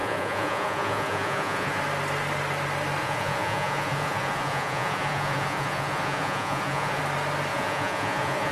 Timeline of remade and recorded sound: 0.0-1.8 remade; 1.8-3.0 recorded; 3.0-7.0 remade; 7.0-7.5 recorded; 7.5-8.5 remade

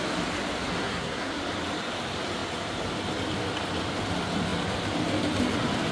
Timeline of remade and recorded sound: 0.0-0.8 recorded; 0.8-1.4 remade; 1.4-5.9 recorded

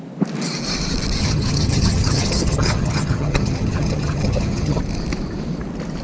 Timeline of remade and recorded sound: 0.0-1.2 recorded; 1.2-4.8 remade; 4.8-6.0 recorded

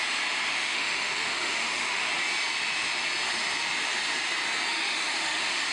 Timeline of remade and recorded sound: 0.0-0.5 recorded; 0.5-2.1 remade; 2.1-4.7 recorded; 4.7-5.7 remade

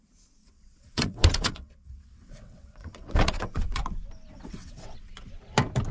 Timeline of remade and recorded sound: 0.0-0.4 recorded; 0.4-3.8 remade; 3.8-4.3 recorded; 4.3-5.3 remade; 5.3-5.9 recorded

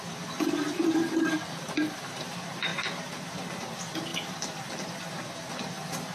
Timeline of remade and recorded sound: 0.0-6.1 recorded